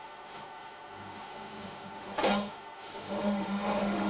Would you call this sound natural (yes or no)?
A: no